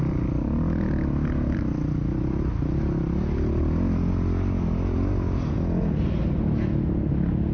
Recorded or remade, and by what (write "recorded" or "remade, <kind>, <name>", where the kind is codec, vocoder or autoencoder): recorded